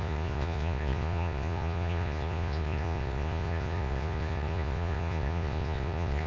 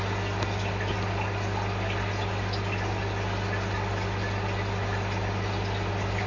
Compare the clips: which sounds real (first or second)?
second